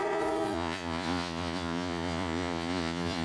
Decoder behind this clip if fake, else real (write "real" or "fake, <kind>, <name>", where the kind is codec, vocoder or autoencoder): fake, vocoder, Vocos